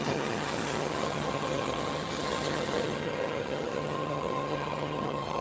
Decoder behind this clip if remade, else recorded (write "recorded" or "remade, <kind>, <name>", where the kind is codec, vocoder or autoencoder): remade, vocoder, HiFi-GAN